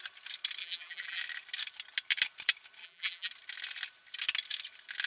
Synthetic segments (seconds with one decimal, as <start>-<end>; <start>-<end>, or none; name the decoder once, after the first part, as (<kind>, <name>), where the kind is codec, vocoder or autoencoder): 0.6-1.2 (vocoder, BigVGAN v2); 2.8-3.3